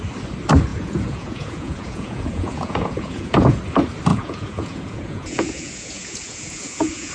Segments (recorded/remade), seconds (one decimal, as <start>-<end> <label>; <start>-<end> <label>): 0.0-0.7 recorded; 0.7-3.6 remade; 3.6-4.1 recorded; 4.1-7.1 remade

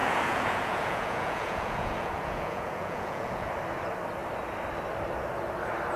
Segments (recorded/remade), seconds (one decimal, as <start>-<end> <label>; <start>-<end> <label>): 0.0-3.5 remade; 3.5-6.0 recorded

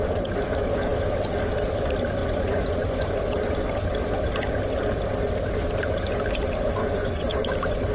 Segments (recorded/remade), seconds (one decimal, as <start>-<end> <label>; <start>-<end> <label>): 0.0-2.2 recorded; 2.2-3.1 remade; 3.1-6.8 recorded; 6.8-7.5 remade; 7.5-7.9 recorded

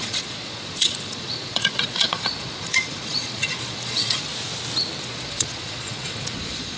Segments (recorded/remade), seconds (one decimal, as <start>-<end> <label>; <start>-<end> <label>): 0.0-4.3 remade; 4.3-5.0 recorded; 5.0-6.8 remade

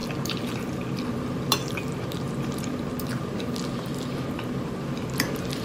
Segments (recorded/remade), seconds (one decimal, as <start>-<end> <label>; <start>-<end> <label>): 0.0-5.6 recorded

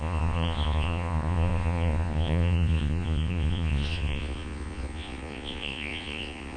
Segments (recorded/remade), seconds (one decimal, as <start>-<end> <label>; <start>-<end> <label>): 0.0-6.6 remade

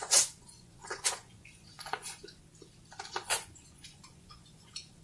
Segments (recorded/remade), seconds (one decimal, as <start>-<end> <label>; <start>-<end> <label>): 0.0-2.4 remade; 2.4-3.1 recorded; 3.1-5.0 remade

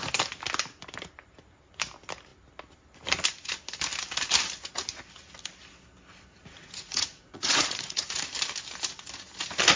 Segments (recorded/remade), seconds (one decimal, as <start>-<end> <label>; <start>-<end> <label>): 0.0-6.3 recorded; 6.3-8.2 remade; 8.2-9.8 recorded